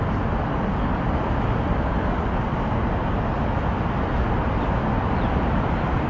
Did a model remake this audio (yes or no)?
no